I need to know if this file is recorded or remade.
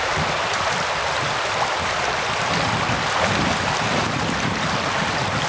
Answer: recorded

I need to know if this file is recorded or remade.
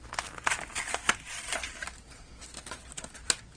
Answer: recorded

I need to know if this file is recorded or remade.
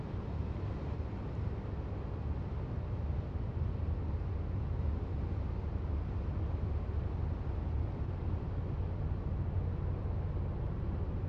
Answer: recorded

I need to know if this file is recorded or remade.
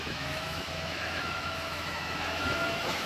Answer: remade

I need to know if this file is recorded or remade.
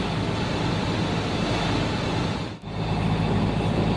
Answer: recorded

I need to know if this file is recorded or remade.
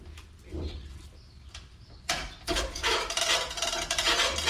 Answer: recorded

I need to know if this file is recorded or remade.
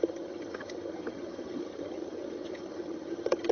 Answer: remade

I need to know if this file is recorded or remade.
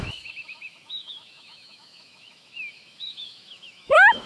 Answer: remade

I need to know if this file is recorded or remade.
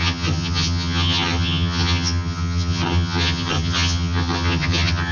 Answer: remade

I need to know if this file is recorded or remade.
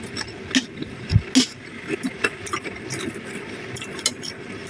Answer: recorded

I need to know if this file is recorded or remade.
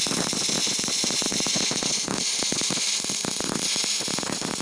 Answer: recorded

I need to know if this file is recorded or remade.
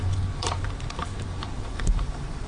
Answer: remade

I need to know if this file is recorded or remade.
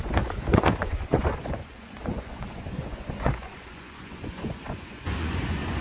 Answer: remade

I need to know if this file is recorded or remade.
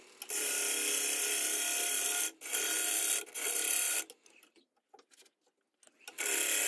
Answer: recorded